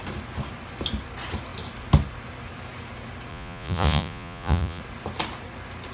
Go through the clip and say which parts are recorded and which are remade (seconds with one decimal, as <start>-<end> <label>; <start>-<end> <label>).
0.0-3.3 recorded; 3.3-4.8 remade; 4.8-5.9 recorded